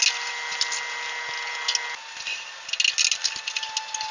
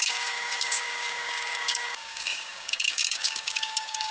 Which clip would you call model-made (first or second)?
second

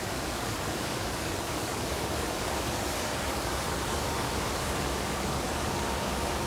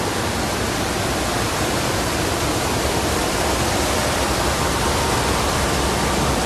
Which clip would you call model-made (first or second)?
first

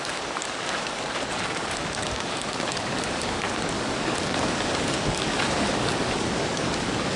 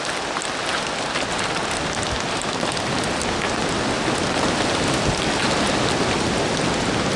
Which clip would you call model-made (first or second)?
first